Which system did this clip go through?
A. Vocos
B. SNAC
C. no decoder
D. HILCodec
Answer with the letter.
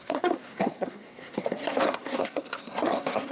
B